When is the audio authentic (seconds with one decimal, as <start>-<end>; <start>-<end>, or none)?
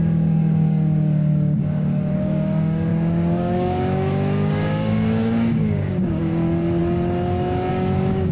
6.8-7.7